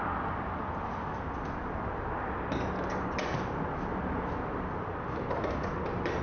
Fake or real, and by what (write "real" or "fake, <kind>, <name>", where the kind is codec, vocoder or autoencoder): real